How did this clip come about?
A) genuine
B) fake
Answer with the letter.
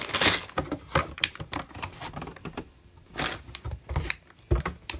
A